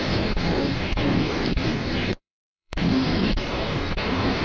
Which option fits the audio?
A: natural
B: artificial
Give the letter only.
B